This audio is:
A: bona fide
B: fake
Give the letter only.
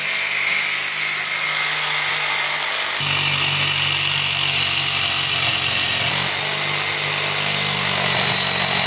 A